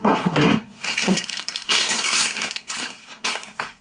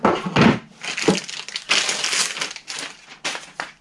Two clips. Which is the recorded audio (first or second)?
second